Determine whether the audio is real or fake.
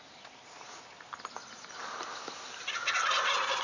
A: real